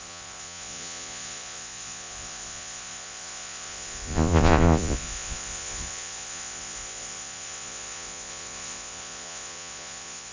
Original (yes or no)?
no